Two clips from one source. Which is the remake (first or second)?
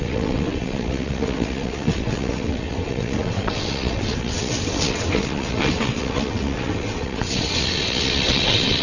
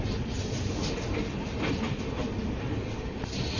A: first